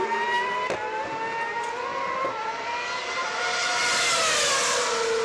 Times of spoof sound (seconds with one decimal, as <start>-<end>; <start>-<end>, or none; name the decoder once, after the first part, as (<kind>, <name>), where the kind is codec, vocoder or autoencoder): none

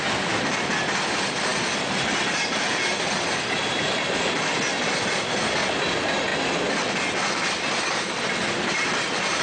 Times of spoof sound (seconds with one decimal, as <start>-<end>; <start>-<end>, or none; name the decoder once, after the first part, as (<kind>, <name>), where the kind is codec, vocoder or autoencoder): none

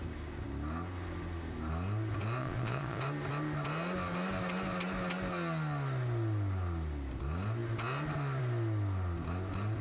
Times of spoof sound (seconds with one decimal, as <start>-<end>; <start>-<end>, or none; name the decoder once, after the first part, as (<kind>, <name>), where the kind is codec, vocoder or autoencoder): 2.4-3.0 (vocoder, Vocos)

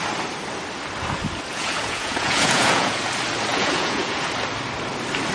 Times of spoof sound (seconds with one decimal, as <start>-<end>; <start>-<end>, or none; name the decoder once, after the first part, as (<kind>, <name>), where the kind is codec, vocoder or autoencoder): 1.5-2.9 (vocoder, Vocos); 3.5-4.3

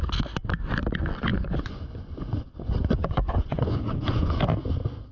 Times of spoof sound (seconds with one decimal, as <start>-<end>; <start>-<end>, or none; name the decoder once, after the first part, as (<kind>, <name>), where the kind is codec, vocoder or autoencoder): 1.3-4.4 (vocoder, Vocos)

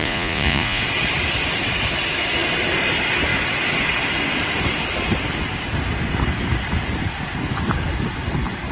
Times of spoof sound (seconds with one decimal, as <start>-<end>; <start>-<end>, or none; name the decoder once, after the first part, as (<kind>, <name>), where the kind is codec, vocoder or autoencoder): 0.0-0.8 (vocoder, Vocos)